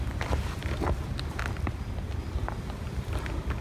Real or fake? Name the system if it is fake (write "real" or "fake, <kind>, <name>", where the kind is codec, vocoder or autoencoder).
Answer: real